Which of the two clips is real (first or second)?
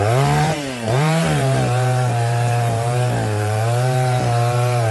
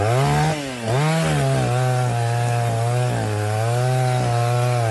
second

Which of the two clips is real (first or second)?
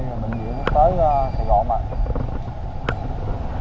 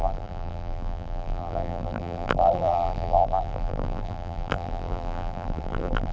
first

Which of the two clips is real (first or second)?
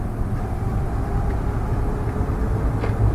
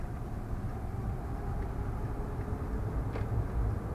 first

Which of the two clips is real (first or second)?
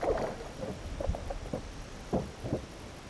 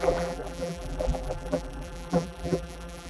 first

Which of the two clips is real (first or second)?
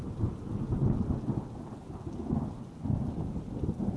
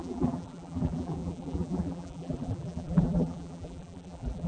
first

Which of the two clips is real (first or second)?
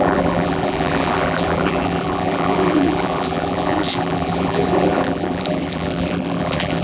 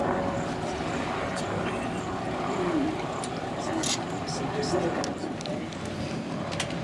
second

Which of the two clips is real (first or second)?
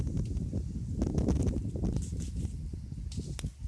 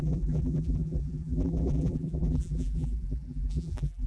first